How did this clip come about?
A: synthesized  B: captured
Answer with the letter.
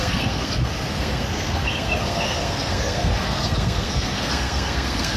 A